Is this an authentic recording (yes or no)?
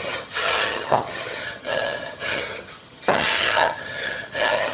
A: no